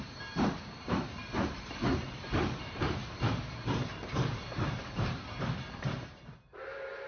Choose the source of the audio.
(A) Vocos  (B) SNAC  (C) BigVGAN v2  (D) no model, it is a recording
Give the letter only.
C